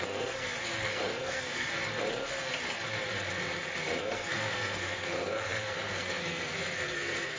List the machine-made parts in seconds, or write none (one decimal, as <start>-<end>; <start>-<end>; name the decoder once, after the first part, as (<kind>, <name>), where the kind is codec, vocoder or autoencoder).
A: 0.0-1.7 (codec, SNAC); 4.0-7.4